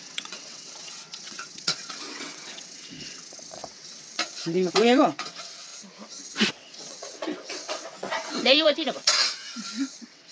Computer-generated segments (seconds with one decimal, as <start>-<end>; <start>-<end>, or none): 0.0-5.7; 6.5-10.3